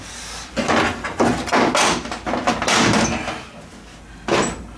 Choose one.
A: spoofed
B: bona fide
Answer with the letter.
B